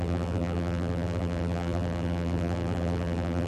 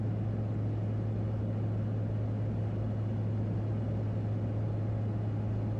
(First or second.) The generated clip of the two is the first